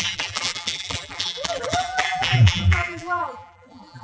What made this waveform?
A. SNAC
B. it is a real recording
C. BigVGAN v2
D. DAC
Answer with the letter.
C